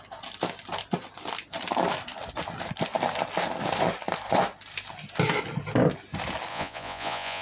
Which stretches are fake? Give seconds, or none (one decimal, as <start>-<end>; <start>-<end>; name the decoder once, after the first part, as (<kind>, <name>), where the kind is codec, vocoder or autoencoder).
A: 6.5-7.4 (vocoder, Vocos)

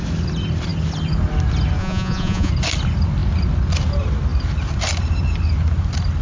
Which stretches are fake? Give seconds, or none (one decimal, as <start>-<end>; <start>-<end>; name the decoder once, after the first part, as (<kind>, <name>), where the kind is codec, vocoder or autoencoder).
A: 1.8-2.5 (vocoder, Vocos)

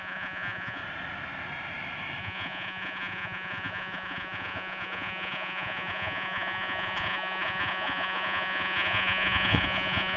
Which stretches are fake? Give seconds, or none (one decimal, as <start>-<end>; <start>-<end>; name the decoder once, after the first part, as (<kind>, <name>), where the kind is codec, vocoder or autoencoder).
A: 0.0-0.8 (vocoder, Vocos); 2.2-10.2